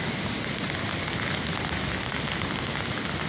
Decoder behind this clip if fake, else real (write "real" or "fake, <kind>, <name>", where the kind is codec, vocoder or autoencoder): real